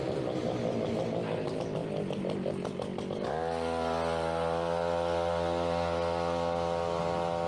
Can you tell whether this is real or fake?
real